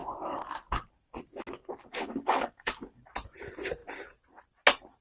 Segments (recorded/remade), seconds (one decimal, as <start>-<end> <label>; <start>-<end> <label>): 0.0-1.9 recorded; 1.9-2.7 remade; 2.7-5.0 recorded